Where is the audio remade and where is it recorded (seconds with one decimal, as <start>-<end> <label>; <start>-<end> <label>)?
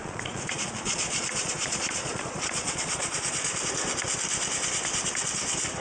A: 0.0-3.5 remade; 3.5-5.8 recorded